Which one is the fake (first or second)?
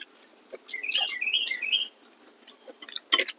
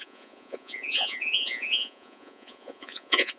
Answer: second